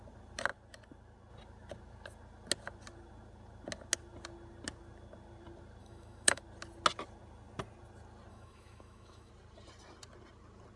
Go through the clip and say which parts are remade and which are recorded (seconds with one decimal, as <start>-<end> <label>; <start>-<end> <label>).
0.0-5.8 recorded; 5.8-6.4 remade; 6.4-8.3 recorded; 8.3-9.3 remade; 9.3-10.8 recorded